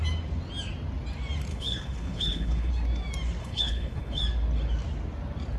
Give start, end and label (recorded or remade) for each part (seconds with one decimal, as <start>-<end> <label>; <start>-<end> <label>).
0.0-1.5 recorded; 1.5-2.7 remade; 2.7-3.4 recorded; 3.4-4.2 remade; 4.2-5.6 recorded